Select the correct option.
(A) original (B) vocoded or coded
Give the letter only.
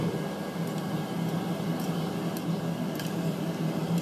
A